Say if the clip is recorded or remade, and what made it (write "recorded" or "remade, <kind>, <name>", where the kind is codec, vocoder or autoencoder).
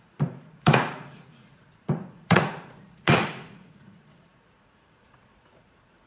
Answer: remade, vocoder, Vocos